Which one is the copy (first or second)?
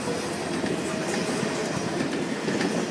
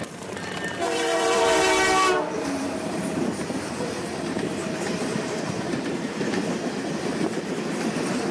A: second